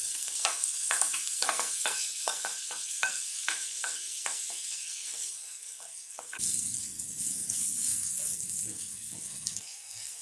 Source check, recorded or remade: remade